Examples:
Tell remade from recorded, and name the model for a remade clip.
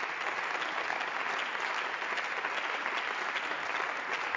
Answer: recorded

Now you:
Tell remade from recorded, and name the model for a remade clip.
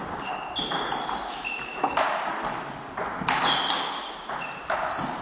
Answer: recorded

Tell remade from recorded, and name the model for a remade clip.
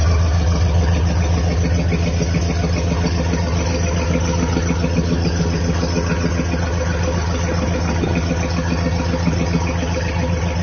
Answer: recorded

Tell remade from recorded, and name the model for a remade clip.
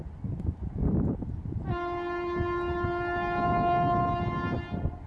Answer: recorded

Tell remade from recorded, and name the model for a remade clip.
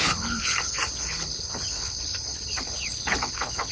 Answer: remade, codec, HILCodec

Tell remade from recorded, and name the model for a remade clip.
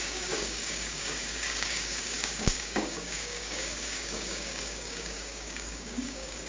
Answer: remade, codec, DAC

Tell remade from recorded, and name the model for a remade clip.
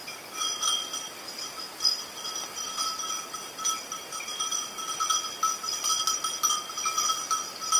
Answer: recorded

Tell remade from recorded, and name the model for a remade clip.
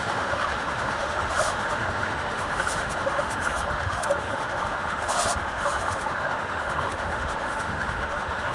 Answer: remade, autoencoder, DAC-VAE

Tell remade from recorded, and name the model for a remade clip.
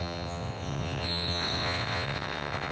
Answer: remade, vocoder, WaveNeXt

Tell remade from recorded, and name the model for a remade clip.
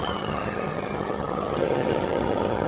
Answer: remade, vocoder, HiFi-GAN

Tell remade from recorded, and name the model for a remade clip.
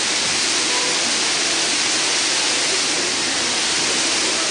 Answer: recorded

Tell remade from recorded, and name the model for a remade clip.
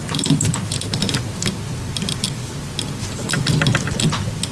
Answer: recorded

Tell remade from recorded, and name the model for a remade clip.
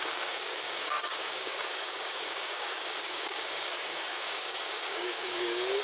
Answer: remade, codec, DAC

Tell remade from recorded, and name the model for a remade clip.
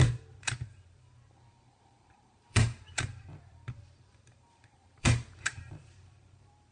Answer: remade, vocoder, BigVGAN v2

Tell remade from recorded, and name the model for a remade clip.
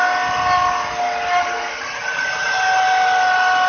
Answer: recorded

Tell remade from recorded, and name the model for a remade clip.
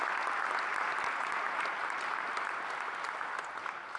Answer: recorded